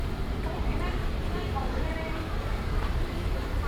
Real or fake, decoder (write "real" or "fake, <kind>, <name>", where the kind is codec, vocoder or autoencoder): fake, vocoder, BigVGAN v2